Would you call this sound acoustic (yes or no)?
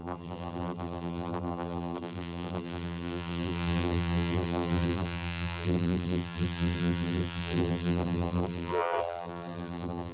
no